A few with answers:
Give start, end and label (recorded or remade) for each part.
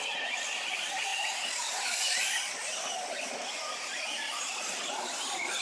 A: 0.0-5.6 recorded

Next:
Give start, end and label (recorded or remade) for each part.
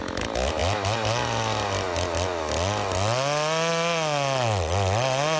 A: 0.0-5.4 recorded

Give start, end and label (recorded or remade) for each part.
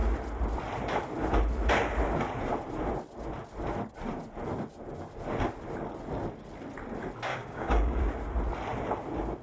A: 0.0-7.3 recorded; 7.3-8.0 remade; 8.0-9.4 recorded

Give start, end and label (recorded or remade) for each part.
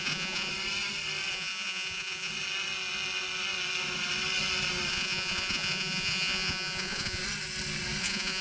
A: 0.0-0.5 remade; 0.5-1.3 recorded; 1.3-2.3 remade; 2.3-4.9 recorded; 4.9-7.2 remade; 7.2-8.0 recorded; 8.0-8.4 remade